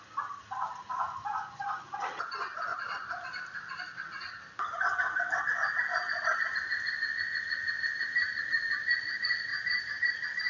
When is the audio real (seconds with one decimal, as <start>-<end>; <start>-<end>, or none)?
0.0-2.7; 3.8-9.5